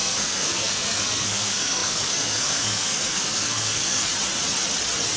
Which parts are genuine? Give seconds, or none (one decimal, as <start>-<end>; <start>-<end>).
4.1-5.2